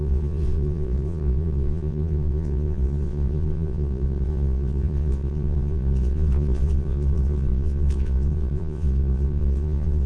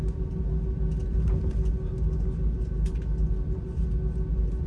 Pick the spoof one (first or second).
first